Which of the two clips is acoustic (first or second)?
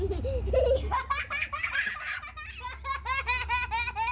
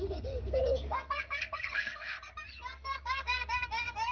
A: first